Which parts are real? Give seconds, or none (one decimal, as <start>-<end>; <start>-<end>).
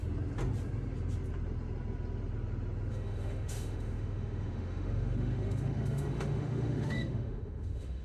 0.0-2.9